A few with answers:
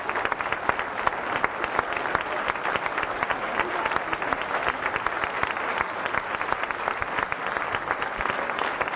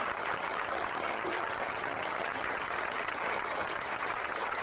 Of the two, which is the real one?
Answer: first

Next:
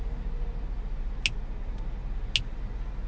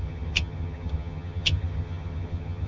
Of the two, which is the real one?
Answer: first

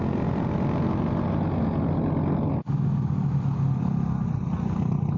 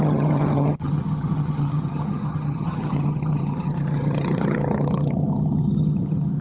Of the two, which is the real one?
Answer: first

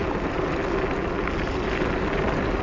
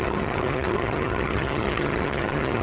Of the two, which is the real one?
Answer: first